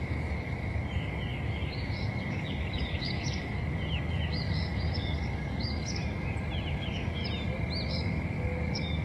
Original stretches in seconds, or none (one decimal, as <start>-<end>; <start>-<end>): 6.0-6.7; 7.2-7.9